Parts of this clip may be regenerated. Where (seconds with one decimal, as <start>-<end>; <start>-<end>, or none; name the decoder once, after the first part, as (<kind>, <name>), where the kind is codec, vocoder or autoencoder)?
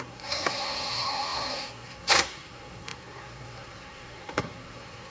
0.0-5.1 (codec, SNAC)